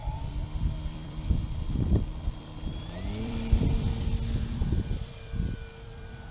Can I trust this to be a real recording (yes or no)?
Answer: no